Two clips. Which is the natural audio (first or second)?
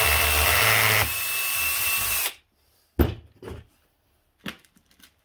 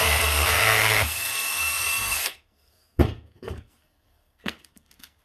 first